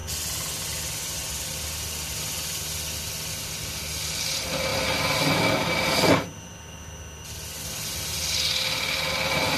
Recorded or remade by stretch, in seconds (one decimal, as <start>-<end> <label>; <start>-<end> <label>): 0.0-9.6 recorded